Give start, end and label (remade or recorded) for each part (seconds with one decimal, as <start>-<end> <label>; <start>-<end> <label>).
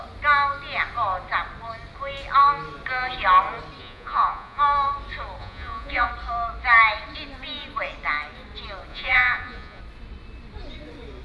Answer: 0.0-3.8 recorded; 3.8-4.6 remade; 4.6-5.4 recorded; 5.4-6.1 remade; 6.1-8.9 recorded; 8.9-9.8 remade; 9.8-11.2 recorded